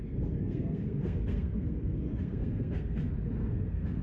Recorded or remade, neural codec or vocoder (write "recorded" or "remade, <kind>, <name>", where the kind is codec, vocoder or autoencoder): remade, codec, SNAC